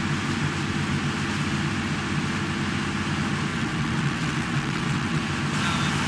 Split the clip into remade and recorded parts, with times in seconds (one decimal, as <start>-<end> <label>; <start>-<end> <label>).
0.0-3.5 recorded; 3.5-5.3 remade; 5.3-6.1 recorded